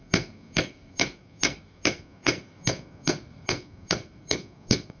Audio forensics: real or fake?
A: fake